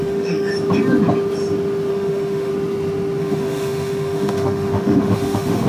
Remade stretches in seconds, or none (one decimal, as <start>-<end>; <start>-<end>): 0.0-0.5; 1.9-2.5; 3.2-5.7